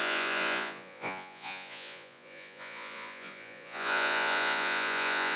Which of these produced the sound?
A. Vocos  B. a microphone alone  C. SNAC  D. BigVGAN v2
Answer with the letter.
A